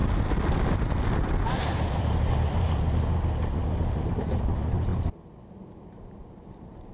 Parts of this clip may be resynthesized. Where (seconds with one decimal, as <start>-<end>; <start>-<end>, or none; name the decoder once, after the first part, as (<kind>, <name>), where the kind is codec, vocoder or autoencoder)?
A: 4.1-4.9 (vocoder, BigVGAN v2); 5.5-6.9